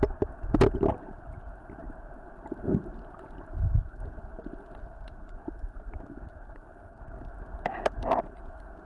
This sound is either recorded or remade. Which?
recorded